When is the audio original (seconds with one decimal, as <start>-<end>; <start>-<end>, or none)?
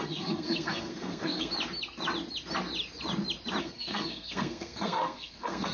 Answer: 1.5-3.6